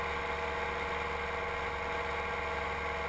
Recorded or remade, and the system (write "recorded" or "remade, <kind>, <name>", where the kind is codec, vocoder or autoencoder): recorded